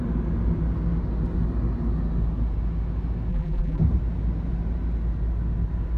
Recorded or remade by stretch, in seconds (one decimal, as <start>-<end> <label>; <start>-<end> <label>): 0.0-3.3 recorded; 3.3-3.8 remade; 3.8-6.0 recorded